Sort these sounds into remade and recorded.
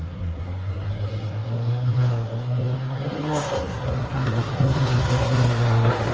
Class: remade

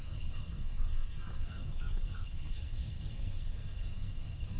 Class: remade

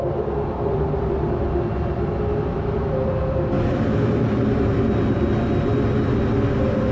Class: recorded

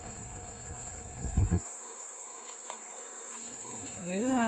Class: remade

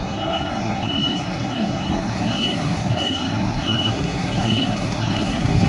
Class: remade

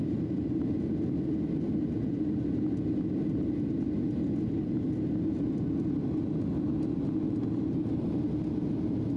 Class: recorded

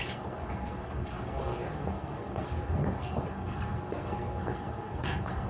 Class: remade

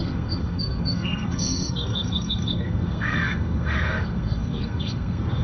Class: remade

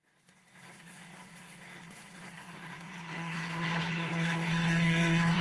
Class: remade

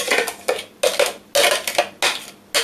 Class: recorded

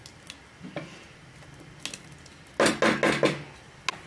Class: recorded